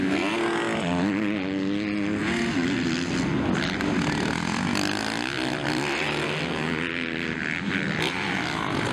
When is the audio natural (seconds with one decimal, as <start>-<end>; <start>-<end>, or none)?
0.0-8.9

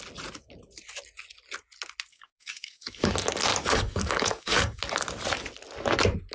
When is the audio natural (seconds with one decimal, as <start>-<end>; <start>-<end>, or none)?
0.0-2.1; 3.1-3.5; 4.8-6.3

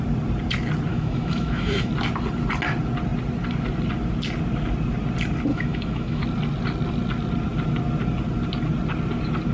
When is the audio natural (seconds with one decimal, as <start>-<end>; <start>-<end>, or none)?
0.0-0.9; 1.9-5.5; 6.2-9.5